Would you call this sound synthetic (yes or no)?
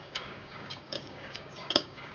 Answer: yes